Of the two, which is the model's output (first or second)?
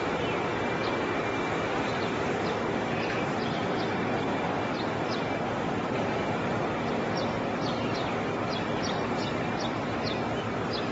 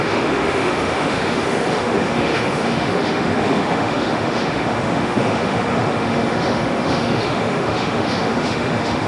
second